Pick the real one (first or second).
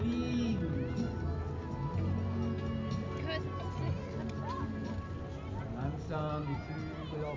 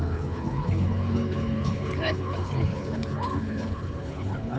first